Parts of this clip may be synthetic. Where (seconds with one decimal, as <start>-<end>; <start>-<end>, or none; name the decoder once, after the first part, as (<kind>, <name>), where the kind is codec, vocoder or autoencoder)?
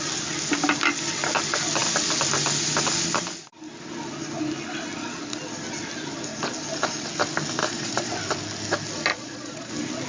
7.6-8.1 (vocoder, Vocos); 9.1-9.7